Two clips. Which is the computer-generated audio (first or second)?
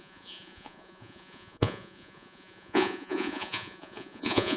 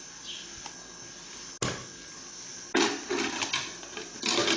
first